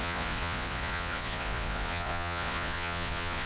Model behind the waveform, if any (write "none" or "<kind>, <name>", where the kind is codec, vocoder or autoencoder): vocoder, Vocos